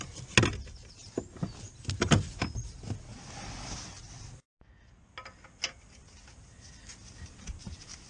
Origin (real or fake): real